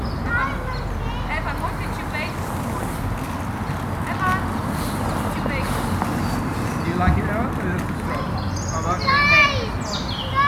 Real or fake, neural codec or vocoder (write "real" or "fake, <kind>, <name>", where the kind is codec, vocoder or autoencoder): real